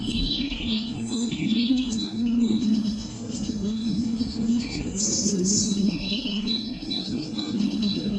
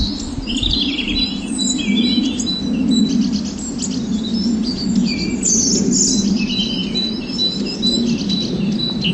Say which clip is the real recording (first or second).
second